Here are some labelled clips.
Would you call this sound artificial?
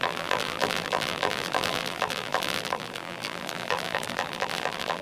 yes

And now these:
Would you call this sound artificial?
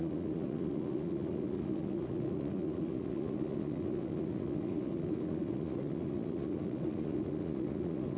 yes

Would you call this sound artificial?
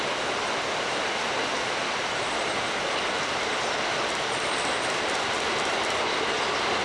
no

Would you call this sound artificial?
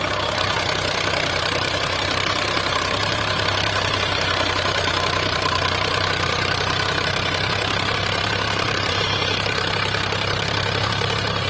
yes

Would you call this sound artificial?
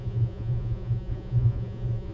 yes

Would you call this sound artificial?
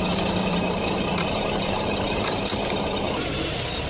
yes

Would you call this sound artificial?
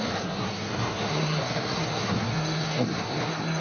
yes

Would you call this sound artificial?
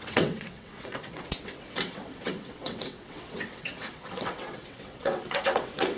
yes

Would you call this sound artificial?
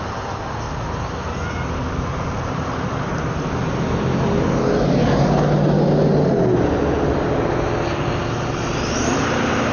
no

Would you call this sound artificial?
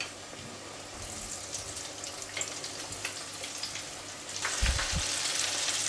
no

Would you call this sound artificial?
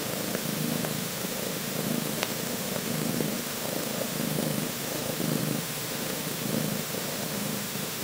yes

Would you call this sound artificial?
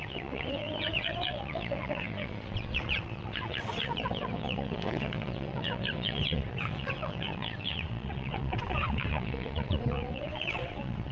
yes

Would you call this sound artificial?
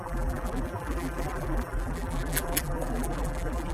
yes